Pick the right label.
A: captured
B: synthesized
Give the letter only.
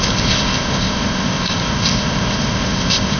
B